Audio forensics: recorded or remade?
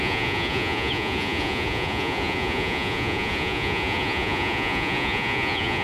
remade